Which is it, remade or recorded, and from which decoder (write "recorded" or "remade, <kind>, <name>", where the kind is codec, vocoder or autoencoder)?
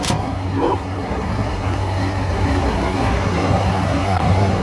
remade, codec, SNAC